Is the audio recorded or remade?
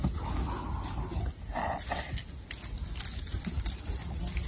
recorded